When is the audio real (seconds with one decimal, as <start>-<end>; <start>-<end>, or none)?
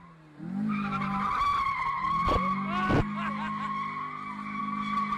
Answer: 0.0-5.2